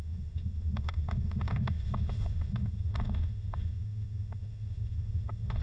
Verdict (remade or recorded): remade